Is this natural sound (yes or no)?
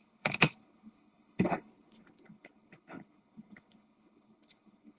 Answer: no